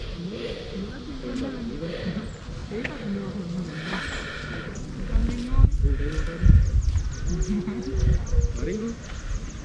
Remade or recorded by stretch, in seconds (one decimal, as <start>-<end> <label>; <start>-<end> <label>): 0.0-9.6 recorded